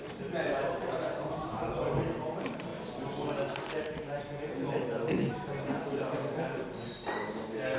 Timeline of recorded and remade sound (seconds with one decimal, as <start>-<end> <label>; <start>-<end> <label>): 0.0-2.7 remade; 2.7-3.8 recorded; 3.8-5.9 remade; 5.9-7.1 recorded; 7.1-7.8 remade